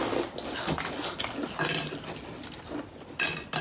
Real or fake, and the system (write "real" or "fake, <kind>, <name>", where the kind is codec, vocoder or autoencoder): real